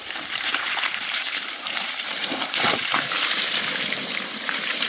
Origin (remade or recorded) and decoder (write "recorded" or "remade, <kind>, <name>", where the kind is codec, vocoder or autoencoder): remade, vocoder, BigVGAN v2